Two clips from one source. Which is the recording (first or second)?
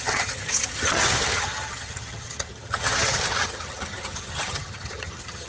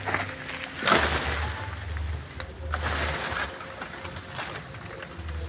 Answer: second